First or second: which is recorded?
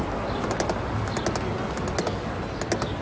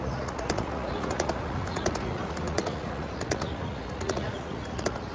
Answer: first